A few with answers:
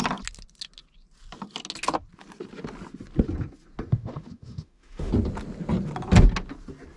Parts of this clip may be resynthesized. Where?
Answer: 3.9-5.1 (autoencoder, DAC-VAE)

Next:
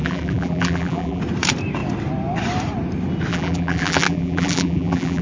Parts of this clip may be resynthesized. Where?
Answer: 0.0-1.2 (vocoder, BigVGAN v2); 3.3-5.2

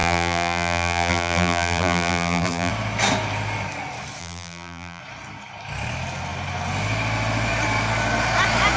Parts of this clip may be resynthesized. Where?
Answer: 0.0-2.7 (vocoder, BigVGAN v2); 4.2-5.0

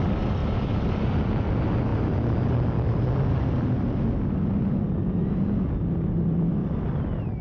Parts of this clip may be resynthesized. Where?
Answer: 6.6-7.4 (vocoder, BigVGAN v2)

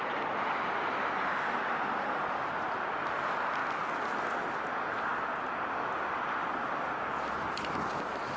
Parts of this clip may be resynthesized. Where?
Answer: none

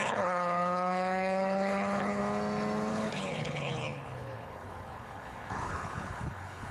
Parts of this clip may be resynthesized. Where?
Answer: 0.0-2.2 (codec, HILCodec); 2.9-6.7